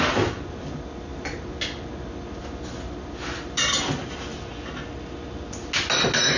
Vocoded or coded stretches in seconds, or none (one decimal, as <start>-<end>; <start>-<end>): none